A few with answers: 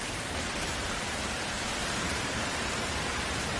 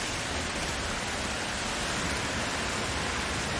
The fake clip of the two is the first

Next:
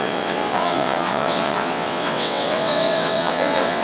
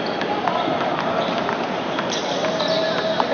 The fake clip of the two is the first